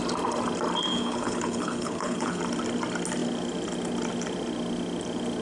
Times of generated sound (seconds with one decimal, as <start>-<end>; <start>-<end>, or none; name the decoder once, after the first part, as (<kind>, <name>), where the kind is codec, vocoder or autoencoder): 0.9-2.4 (codec, HILCodec)